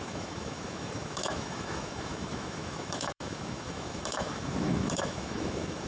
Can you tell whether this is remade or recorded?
remade